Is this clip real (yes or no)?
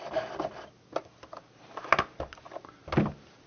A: yes